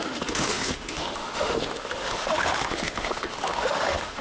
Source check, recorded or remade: remade